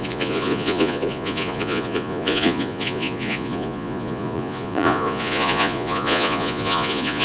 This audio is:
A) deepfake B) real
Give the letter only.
A